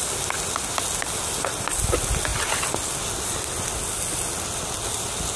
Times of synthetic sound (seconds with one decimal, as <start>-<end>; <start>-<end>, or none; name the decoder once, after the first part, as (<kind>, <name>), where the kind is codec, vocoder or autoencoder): none